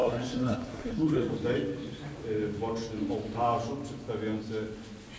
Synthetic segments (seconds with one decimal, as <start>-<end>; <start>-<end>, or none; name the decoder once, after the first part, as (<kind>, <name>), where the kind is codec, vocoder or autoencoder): 0.0-1.3 (codec, SNAC)